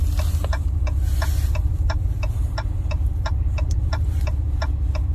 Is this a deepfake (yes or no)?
no